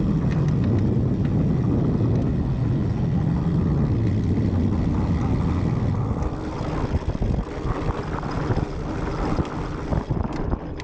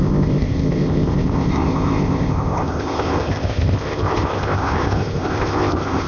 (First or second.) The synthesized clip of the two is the second